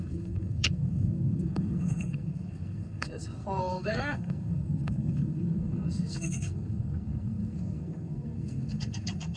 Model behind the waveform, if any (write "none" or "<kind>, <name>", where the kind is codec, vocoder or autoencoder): codec, SNAC